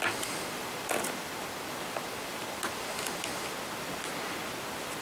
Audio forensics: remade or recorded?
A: recorded